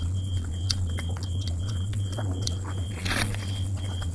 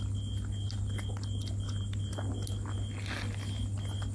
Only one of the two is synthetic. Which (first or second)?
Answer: first